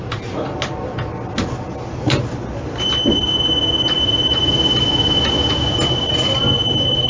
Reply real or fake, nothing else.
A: real